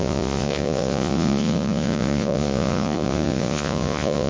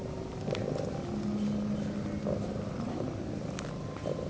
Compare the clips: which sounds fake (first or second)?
first